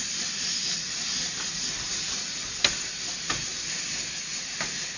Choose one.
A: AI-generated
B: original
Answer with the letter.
B